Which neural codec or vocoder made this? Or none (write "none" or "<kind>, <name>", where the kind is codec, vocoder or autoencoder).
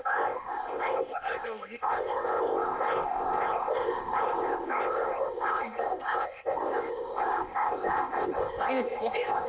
codec, ZipCodec